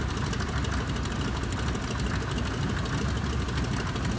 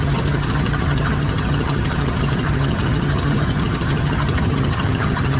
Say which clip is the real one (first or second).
first